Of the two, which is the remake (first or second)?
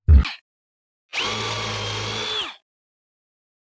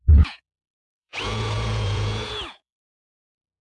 second